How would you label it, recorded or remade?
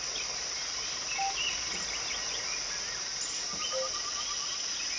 recorded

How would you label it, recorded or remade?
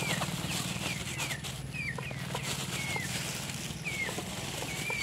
remade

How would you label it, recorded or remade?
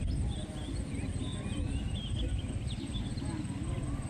recorded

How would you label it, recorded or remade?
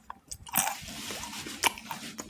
recorded